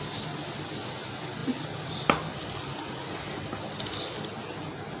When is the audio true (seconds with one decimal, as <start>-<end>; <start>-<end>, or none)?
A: 0.0-5.0

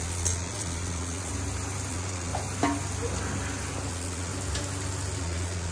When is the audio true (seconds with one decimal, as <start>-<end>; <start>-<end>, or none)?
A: 1.3-1.9; 2.3-3.9; 4.3-5.2

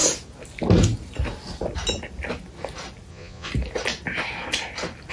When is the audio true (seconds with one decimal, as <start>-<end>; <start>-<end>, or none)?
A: 0.0-3.1; 3.5-5.1

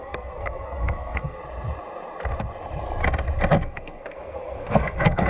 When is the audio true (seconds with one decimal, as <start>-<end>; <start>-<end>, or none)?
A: 1.4-3.6